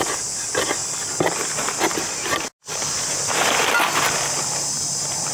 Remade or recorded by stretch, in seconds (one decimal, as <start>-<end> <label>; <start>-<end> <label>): 0.0-5.3 recorded

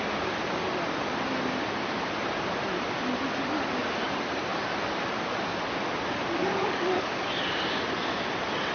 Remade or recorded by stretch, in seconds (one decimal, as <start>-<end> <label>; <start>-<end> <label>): 0.0-6.4 recorded; 6.4-7.3 remade; 7.3-8.7 recorded

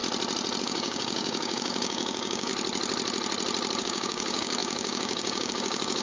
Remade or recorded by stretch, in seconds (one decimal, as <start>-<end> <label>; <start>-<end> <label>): 0.0-0.6 recorded; 0.6-2.5 remade; 2.5-3.8 recorded; 3.8-6.0 remade

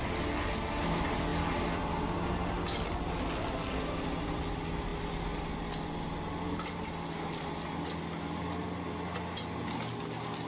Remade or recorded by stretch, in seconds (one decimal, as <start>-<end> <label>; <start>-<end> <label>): 0.0-10.5 recorded

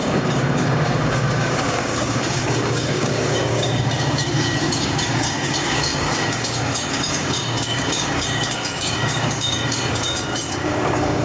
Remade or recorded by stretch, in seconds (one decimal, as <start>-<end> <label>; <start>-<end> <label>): 0.0-11.2 remade

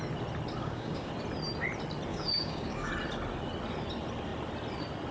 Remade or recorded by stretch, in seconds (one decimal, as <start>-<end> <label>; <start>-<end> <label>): 0.0-0.6 recorded; 0.6-1.1 remade; 1.1-2.1 recorded; 2.1-2.9 remade; 2.9-5.1 recorded

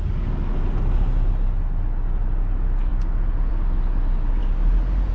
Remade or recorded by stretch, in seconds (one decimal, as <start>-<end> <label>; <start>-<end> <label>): 0.0-5.1 recorded